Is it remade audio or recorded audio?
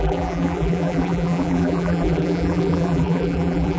remade